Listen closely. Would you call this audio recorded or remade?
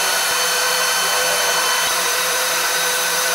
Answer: remade